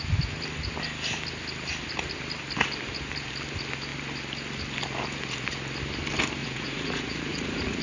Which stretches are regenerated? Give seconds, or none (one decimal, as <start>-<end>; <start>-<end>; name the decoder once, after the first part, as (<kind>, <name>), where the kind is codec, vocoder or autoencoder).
6.4-7.8 (vocoder, Vocos)